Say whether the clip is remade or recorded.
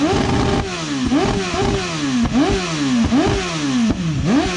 recorded